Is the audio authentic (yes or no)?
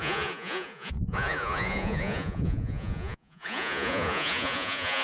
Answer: no